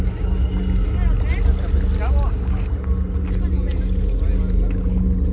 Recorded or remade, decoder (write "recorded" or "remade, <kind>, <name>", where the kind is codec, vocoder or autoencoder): recorded